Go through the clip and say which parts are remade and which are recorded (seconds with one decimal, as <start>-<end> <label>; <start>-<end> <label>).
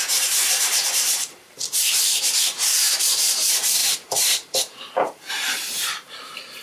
0.0-6.6 remade